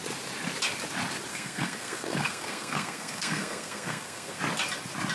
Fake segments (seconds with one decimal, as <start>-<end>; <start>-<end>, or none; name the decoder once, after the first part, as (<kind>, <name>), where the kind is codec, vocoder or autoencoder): 1.3-4.4 (codec, SNAC)